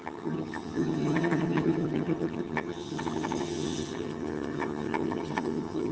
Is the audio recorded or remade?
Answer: remade